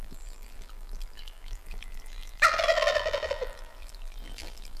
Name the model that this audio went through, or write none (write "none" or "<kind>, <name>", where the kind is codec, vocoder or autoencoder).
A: vocoder, BigVGAN v2